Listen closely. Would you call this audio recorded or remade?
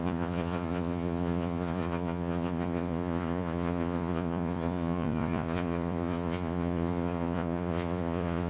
remade